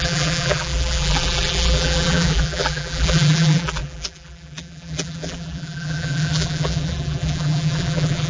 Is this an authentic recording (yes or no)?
no